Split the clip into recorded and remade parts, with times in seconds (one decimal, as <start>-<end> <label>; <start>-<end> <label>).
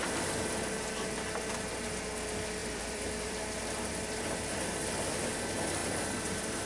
0.0-2.6 recorded; 2.6-5.3 remade; 5.3-5.8 recorded; 5.8-6.6 remade